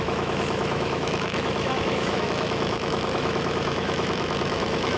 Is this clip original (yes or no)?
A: no